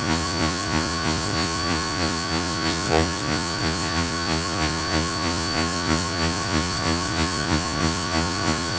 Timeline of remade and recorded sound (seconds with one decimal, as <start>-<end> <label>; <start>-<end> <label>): 0.0-8.8 remade